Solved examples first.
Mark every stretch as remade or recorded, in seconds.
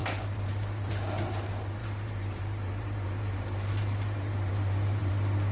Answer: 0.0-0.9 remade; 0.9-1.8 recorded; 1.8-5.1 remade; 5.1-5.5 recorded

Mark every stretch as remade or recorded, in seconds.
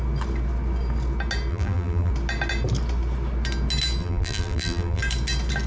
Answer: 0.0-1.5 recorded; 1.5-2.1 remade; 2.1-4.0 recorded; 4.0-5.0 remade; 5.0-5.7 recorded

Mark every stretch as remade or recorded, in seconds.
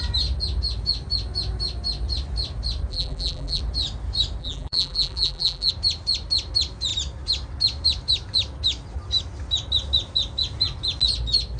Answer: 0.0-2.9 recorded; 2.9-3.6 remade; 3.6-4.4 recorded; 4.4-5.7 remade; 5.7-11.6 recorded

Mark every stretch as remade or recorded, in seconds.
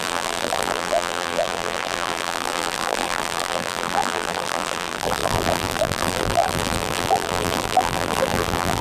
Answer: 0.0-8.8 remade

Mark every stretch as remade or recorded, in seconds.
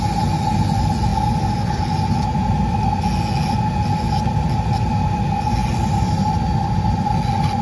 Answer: 0.0-5.6 recorded; 5.6-7.1 remade; 7.1-7.6 recorded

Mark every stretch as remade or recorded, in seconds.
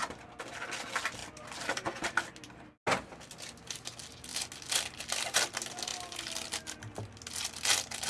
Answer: 0.0-8.1 recorded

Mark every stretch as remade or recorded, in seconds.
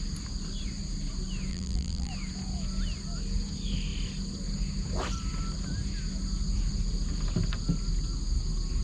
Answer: 0.0-1.5 recorded; 1.5-2.1 remade; 2.1-8.8 recorded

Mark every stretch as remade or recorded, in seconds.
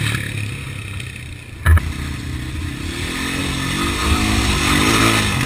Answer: 0.0-4.0 recorded; 4.0-5.0 remade; 5.0-5.5 recorded